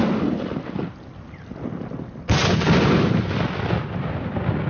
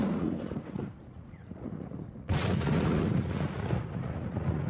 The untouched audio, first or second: first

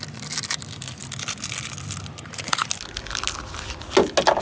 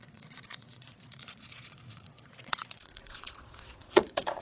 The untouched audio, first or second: first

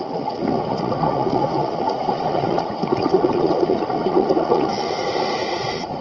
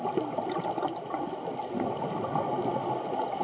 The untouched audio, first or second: second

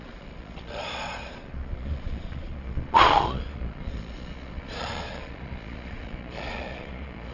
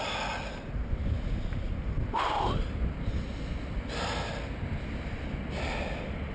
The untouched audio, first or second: second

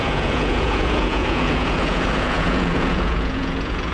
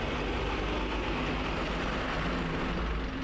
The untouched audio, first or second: second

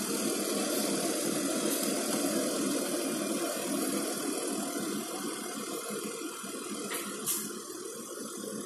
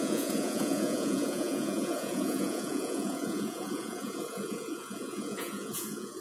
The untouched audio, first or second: first